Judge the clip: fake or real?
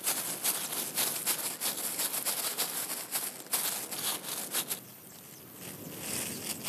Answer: real